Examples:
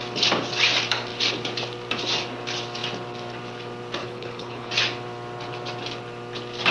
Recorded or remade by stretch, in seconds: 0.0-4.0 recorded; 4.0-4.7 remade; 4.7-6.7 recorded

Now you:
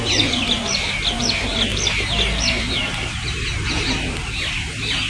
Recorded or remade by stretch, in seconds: 0.0-5.1 recorded

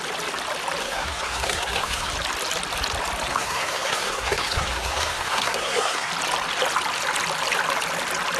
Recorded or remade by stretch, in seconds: 0.0-0.8 recorded; 0.8-2.1 remade; 2.1-3.3 recorded; 3.3-6.1 remade; 6.1-8.4 recorded